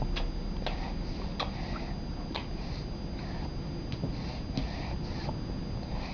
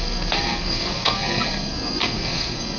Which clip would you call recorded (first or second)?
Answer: first